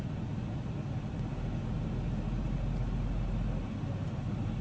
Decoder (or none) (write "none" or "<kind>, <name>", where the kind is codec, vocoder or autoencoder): none